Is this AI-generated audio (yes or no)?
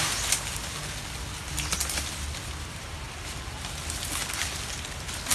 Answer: no